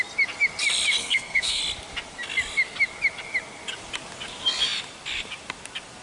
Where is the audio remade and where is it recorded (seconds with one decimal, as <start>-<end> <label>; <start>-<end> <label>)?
0.0-1.0 recorded; 1.0-1.6 remade; 1.6-6.0 recorded